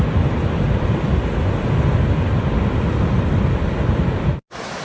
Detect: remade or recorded recorded